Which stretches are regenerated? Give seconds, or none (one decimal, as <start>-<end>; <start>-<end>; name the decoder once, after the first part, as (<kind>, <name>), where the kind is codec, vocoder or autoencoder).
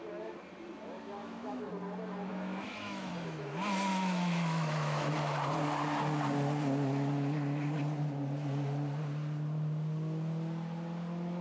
1.2-1.7 (autoencoder, DAC-VAE); 2.3-3.1; 3.9-5.1